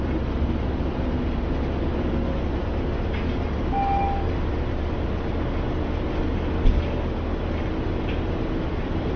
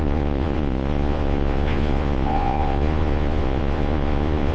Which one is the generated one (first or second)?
second